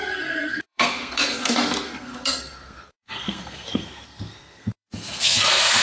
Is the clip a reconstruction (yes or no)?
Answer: yes